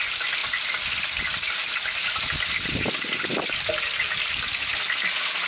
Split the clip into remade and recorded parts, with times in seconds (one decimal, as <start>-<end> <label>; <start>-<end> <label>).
0.0-0.4 recorded; 0.4-3.7 remade; 3.7-5.5 recorded